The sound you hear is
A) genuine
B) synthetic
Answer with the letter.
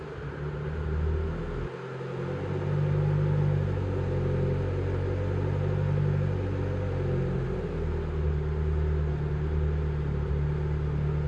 A